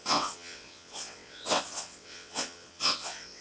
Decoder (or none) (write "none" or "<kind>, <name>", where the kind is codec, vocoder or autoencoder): vocoder, WaveNeXt